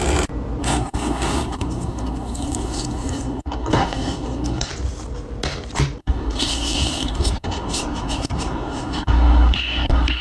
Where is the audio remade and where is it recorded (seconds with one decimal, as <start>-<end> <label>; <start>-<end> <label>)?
0.0-0.6 recorded; 0.6-4.7 remade; 4.7-6.0 recorded; 6.0-10.2 remade